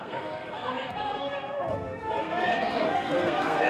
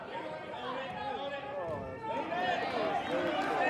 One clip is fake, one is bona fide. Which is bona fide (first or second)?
second